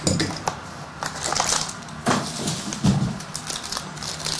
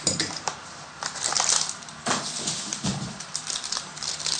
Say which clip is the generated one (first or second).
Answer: second